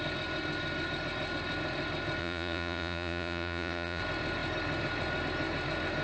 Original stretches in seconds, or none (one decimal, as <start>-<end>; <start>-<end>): 0.0-2.2; 4.0-6.0